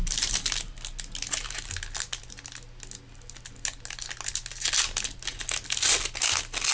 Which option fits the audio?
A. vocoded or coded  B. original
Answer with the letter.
B